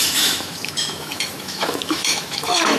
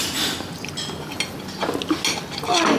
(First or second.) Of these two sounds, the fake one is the first